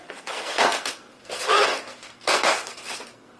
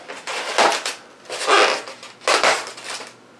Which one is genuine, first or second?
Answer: second